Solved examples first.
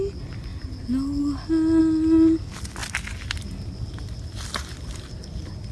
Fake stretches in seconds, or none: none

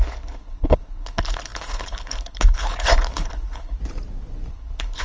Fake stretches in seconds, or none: 0.0-3.8 (codec, HILCodec); 4.5-5.0